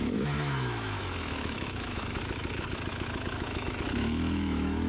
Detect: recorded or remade remade